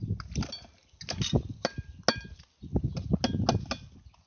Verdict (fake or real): real